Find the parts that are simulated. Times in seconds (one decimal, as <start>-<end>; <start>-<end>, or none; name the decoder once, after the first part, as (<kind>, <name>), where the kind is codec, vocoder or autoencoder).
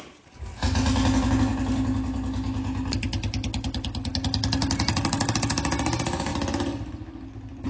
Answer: none